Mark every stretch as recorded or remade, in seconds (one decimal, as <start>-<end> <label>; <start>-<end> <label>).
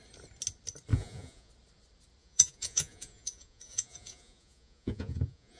0.0-0.9 recorded; 0.9-1.5 remade; 1.5-2.2 recorded; 2.2-5.6 remade